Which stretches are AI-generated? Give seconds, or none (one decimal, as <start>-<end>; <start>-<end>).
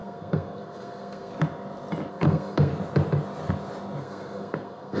0.0-1.3; 2.1-2.7; 4.0-5.0